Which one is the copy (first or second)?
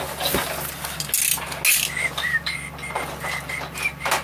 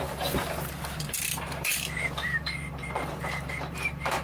second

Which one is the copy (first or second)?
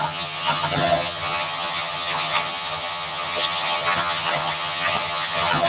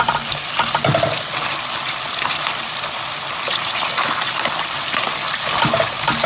first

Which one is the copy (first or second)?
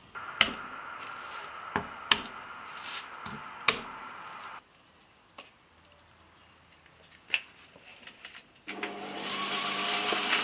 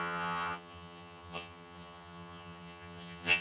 second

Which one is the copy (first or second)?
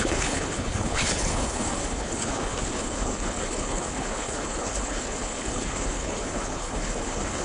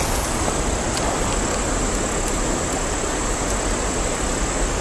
first